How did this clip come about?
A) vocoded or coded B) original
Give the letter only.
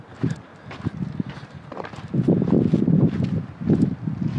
B